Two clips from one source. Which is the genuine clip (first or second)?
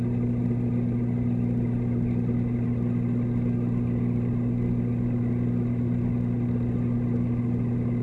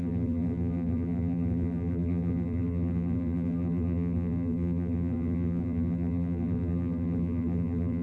first